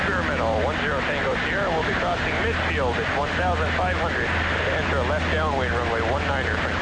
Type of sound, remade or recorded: recorded